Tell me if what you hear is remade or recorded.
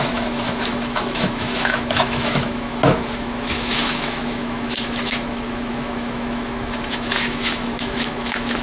remade